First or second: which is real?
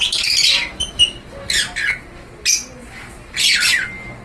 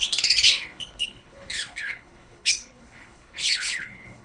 first